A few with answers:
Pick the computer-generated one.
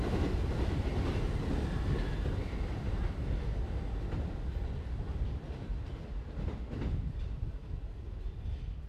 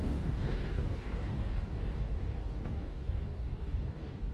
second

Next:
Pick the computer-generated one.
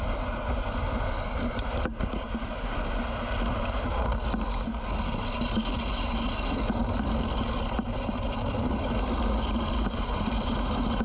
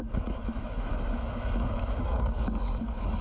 second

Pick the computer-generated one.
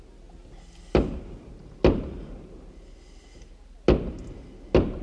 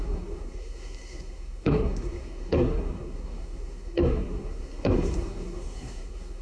second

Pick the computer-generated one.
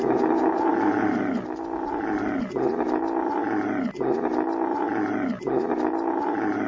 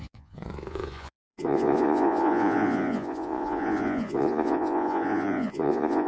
second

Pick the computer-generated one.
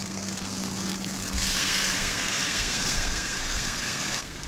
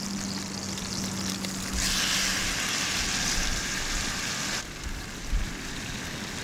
first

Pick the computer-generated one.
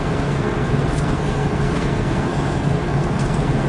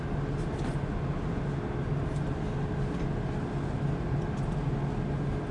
first